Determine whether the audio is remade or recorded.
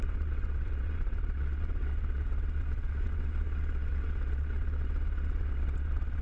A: remade